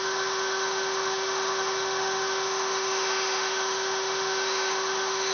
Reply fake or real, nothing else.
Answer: fake